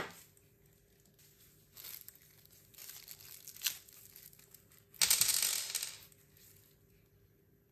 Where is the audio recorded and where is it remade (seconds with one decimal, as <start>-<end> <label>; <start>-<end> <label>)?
0.0-7.7 recorded